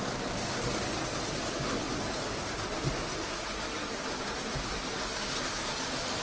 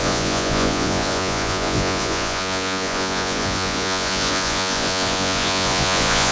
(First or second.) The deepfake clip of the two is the second